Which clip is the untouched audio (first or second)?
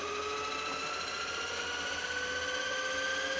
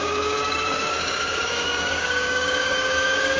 first